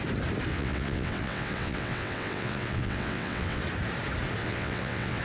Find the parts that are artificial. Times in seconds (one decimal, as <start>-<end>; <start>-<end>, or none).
0.5-3.6; 4.4-5.2